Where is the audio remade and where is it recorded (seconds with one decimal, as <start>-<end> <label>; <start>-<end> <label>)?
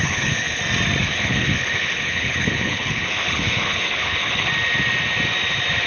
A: 0.0-0.6 remade; 0.6-1.0 recorded; 1.0-4.5 remade; 4.5-5.9 recorded